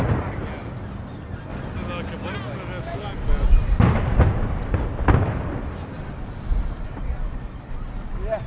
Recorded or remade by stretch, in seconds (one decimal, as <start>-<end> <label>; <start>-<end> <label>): 0.0-8.5 recorded